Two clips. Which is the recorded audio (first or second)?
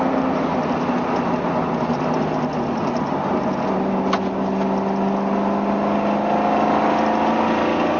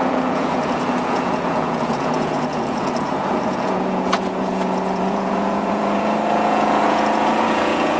first